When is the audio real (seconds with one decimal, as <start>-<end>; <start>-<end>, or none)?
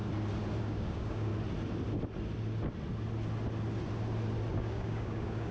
0.0-0.6; 1.3-4.5